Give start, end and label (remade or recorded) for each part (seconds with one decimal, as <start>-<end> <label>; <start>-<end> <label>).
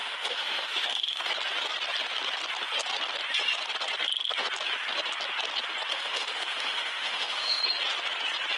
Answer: 0.0-1.3 remade; 1.3-5.9 recorded; 5.9-7.6 remade; 7.6-8.6 recorded